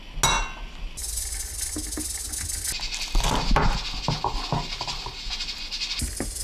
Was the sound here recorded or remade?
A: recorded